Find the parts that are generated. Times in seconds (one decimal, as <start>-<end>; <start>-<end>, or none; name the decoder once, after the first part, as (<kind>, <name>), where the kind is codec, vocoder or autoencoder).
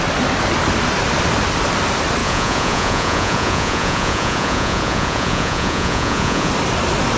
2.2-6.5 (vocoder, Vocos)